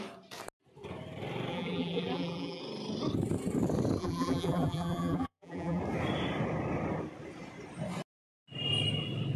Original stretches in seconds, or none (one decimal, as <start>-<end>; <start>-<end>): 0.0-1.5; 2.6-4.0; 5.8-9.4